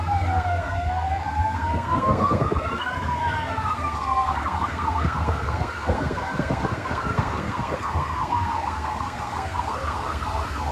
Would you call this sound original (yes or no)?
no